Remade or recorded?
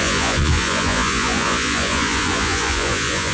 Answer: remade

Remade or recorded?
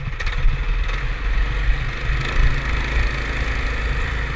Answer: recorded